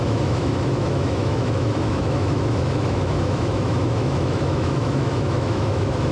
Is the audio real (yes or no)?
no